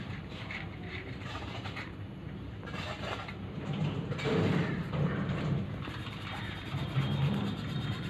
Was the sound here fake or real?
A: fake